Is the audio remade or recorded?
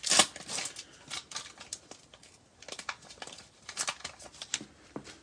recorded